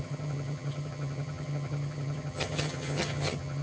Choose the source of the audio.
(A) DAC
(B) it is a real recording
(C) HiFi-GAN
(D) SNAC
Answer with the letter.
C